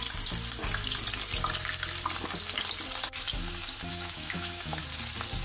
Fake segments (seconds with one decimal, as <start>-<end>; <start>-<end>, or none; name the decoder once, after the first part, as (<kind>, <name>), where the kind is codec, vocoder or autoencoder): 3.9-4.8 (autoencoder, DAC-VAE)